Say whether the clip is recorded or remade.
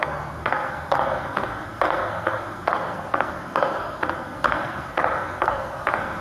remade